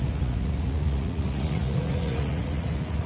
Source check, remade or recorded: remade